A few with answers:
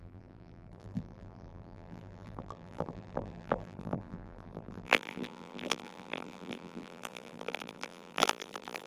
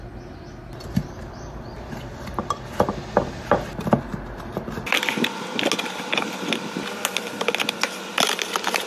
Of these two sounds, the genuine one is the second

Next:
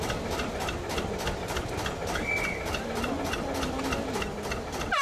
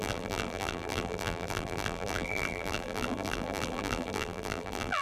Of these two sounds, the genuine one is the first